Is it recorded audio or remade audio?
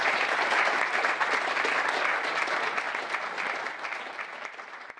recorded